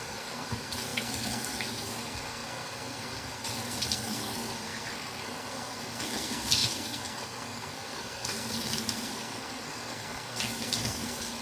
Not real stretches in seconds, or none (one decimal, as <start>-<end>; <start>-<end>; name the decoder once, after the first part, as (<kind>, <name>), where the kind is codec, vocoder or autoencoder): 0.0-11.4 (codec, SNAC)